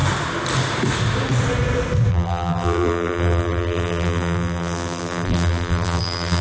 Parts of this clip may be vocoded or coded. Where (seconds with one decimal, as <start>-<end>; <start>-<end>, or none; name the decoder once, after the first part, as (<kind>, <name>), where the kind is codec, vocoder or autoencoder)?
2.1-6.4 (vocoder, BigVGAN v2)